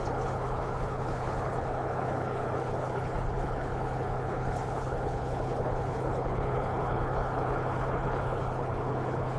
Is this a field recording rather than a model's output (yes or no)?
no